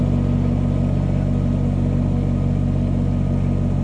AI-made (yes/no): no